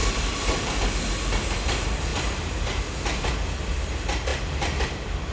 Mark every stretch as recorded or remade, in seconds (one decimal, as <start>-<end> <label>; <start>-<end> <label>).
0.0-0.8 remade; 0.8-5.3 recorded